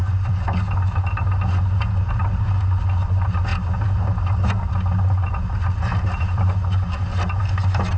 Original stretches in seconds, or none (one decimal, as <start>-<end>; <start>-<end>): 0.0-8.0